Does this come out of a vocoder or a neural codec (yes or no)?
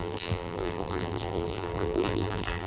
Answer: yes